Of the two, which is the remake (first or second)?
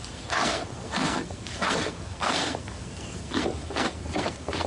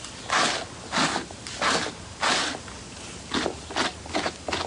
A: first